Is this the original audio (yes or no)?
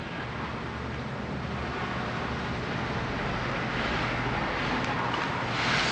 yes